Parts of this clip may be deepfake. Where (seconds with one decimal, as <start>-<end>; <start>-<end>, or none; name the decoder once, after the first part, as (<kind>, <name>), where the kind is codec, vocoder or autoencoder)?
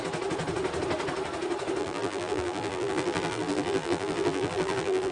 1.8-5.1 (vocoder, BigVGAN v2)